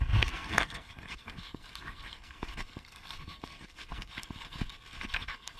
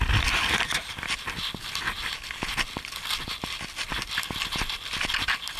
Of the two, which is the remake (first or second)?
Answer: first